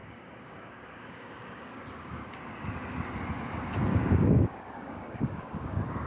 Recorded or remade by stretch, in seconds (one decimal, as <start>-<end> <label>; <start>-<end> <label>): 0.0-2.4 remade; 2.4-3.9 recorded; 3.9-6.1 remade

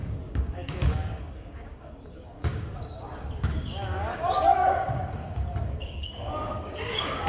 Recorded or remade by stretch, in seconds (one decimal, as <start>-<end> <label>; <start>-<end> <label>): 0.0-7.3 remade

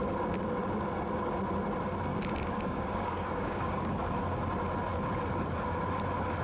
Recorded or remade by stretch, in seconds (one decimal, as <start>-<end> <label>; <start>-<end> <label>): 0.0-2.1 recorded; 2.1-4.0 remade; 4.0-6.4 recorded

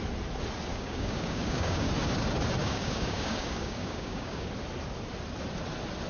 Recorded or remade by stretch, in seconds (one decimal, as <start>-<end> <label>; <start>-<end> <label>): 0.0-0.7 recorded; 0.7-1.9 remade; 1.9-2.6 recorded; 2.6-4.5 remade; 4.5-6.1 recorded